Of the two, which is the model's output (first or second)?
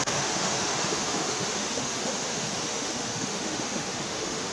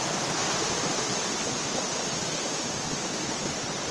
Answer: first